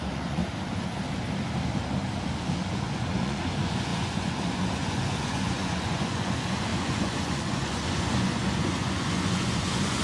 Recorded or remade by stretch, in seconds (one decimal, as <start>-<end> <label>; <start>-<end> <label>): 0.0-0.4 remade; 0.4-2.7 recorded; 2.7-10.0 remade